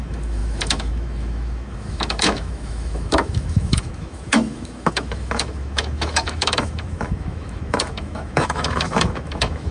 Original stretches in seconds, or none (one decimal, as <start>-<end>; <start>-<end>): none